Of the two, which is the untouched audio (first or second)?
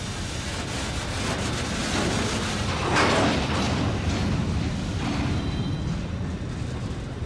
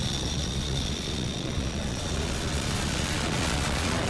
first